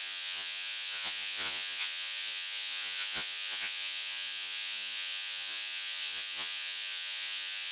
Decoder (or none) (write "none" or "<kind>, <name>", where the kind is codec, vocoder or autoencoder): vocoder, Vocos